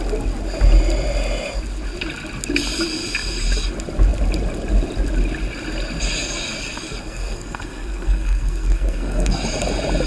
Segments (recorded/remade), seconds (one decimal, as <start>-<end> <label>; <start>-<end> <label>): 0.0-7.0 recorded; 7.0-9.4 remade; 9.4-10.1 recorded